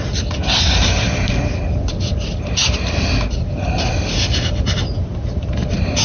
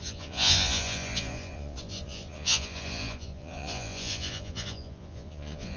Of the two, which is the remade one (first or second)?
second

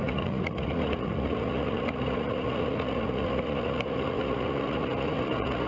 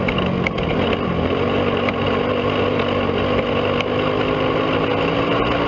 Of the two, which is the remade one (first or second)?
first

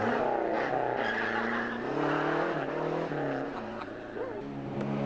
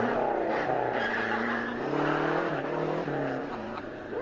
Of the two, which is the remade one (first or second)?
second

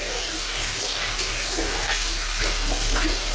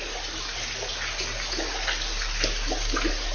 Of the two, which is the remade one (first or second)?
first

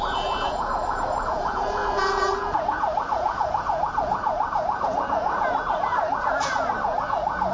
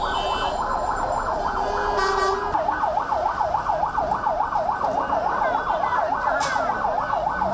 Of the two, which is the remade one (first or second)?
first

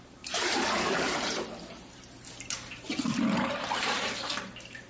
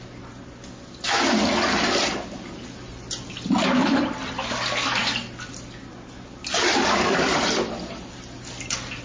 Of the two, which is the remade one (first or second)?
first